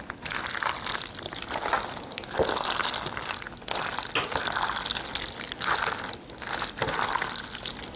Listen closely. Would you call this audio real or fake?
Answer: real